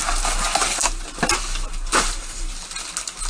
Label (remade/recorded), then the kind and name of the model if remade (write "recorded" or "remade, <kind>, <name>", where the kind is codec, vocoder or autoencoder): recorded